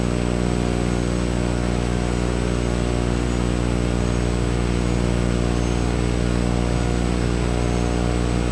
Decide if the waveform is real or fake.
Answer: real